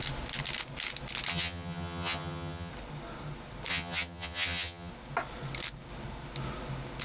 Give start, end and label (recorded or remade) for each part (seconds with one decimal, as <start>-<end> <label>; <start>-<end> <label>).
0.0-1.3 recorded; 1.3-2.7 remade; 2.7-3.7 recorded; 3.7-4.9 remade; 4.9-7.0 recorded